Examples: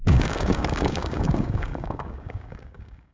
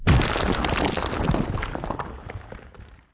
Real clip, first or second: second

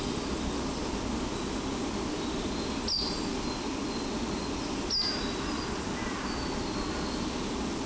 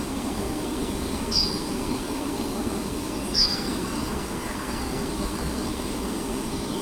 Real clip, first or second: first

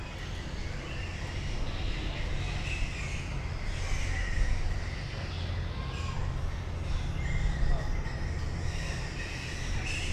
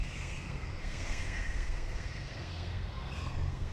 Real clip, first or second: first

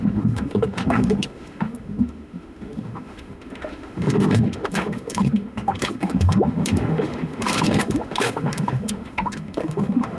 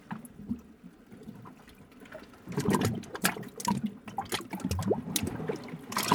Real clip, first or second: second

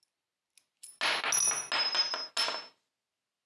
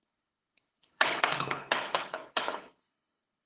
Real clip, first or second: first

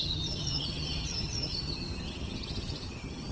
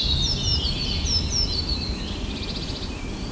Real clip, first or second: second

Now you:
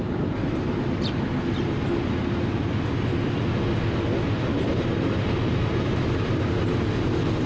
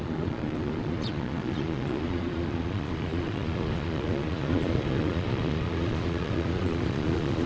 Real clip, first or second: first